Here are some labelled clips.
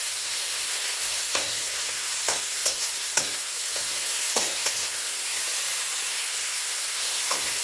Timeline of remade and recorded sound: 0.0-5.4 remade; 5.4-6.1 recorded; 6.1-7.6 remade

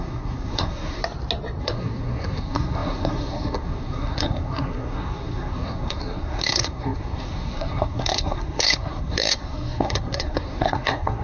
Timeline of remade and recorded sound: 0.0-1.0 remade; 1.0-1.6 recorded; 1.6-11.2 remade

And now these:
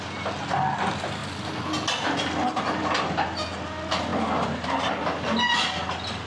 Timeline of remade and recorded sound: 0.0-6.3 recorded